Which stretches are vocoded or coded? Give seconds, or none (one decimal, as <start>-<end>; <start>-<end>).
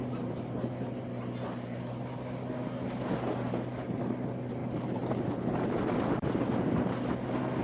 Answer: none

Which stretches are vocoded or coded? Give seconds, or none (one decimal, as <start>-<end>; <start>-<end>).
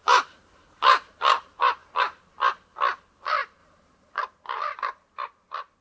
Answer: 0.0-0.8; 3.6-4.2